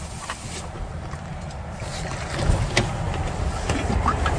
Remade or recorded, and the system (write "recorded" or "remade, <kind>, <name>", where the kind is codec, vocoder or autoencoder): recorded